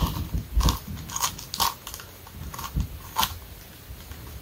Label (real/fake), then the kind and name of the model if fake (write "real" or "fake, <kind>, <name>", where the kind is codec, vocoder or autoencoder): real